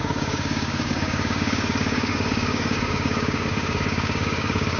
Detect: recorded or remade remade